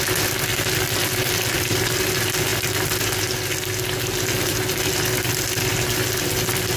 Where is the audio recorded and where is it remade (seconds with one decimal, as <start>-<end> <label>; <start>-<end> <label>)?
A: 0.0-0.5 recorded; 0.5-2.1 remade; 2.1-5.7 recorded; 5.7-6.8 remade